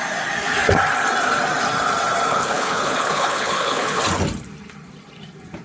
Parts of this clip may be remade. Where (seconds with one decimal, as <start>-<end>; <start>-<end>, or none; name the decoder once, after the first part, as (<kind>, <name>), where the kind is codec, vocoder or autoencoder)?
2.3-4.0 (codec, HILCodec)